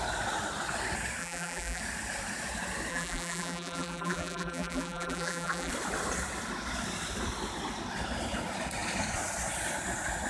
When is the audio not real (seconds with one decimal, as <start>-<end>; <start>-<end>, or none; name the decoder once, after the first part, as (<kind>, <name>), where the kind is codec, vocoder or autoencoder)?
1.2-1.8 (vocoder, BigVGAN v2); 2.9-5.7